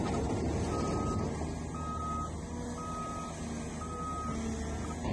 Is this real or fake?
real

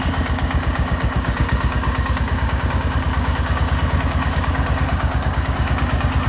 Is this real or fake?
fake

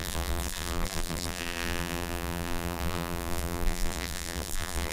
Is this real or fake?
fake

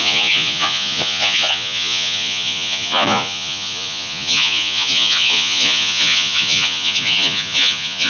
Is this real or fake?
fake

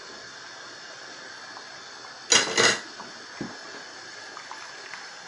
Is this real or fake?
real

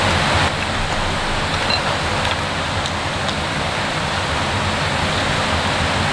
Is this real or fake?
real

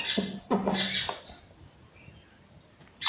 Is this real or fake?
real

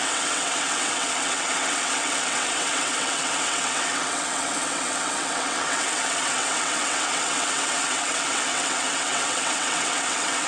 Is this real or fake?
fake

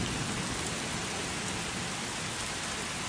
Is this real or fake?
real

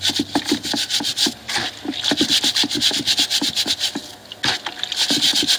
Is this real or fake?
real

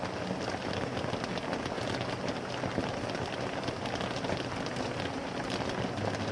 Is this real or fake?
real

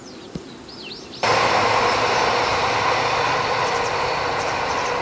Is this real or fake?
real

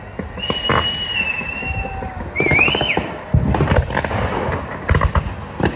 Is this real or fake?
real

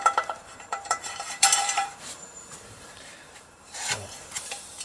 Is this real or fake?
fake